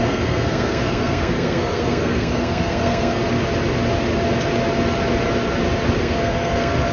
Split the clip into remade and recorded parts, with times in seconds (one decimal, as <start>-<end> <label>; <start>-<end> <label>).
0.0-3.2 remade; 3.2-6.0 recorded; 6.0-6.9 remade